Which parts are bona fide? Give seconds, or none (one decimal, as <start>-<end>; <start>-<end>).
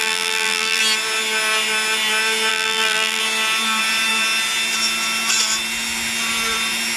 0.8-2.5; 3.2-7.0